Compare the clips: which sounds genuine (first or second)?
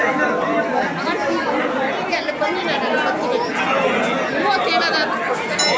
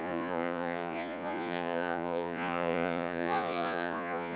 first